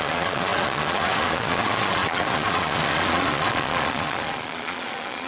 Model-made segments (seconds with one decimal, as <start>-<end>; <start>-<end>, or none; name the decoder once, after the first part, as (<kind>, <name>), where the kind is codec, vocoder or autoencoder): 0.0-5.3 (vocoder, Vocos)